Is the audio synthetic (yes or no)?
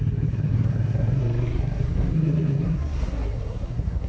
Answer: yes